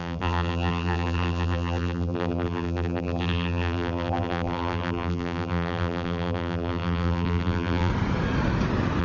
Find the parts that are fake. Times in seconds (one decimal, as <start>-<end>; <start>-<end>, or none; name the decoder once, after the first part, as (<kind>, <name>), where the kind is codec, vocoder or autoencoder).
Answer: 0.0-7.9 (vocoder, BigVGAN v2)